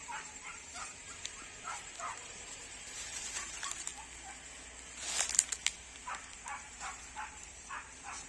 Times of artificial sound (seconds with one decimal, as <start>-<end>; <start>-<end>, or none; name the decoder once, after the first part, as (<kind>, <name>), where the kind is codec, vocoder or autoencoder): 0.0-3.9 (vocoder, BigVGAN v2); 6.1-8.3